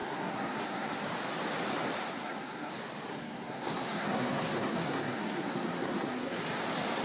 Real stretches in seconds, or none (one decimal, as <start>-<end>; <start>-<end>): 1.0-2.0; 2.7-3.1; 6.4-7.0